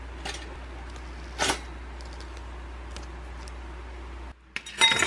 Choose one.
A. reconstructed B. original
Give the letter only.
B